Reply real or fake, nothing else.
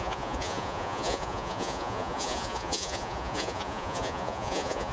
fake